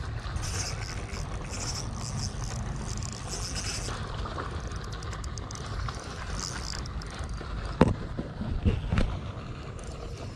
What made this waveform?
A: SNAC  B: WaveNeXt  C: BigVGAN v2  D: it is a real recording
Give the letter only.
D